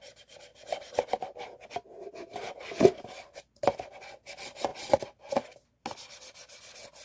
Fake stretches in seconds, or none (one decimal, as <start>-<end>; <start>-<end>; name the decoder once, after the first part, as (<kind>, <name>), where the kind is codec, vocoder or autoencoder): none